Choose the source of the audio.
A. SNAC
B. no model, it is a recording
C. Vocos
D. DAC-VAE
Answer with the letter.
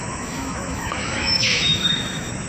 D